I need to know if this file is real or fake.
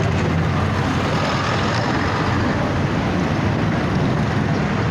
real